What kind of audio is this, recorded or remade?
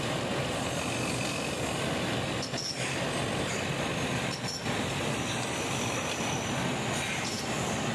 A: recorded